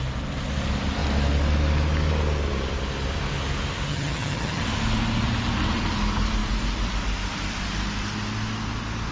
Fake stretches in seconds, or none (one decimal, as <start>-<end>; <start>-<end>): 3.9-4.6